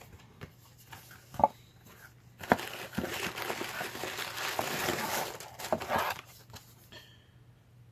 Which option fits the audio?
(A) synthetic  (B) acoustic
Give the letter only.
B